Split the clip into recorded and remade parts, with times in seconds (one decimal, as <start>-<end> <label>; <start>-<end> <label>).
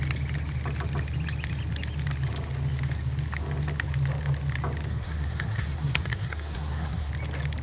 0.0-4.9 recorded; 4.9-7.1 remade; 7.1-7.6 recorded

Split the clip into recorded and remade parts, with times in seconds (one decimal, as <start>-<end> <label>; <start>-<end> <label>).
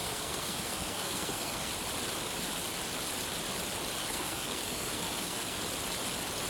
0.0-1.7 remade; 1.7-4.0 recorded; 4.0-5.6 remade; 5.6-6.5 recorded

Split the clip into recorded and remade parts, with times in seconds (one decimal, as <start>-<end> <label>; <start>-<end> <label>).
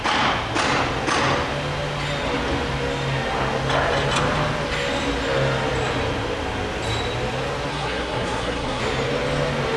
0.0-7.7 recorded; 7.7-8.8 remade; 8.8-9.8 recorded